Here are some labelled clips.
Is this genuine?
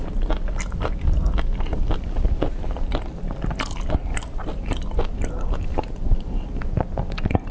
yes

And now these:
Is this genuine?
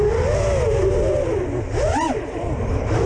yes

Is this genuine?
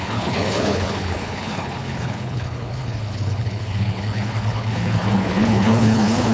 no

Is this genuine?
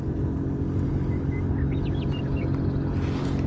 yes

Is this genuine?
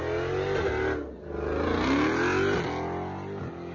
yes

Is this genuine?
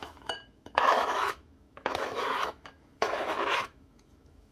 no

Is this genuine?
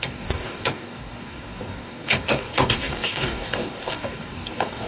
no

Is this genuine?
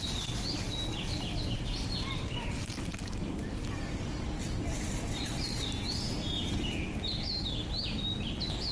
yes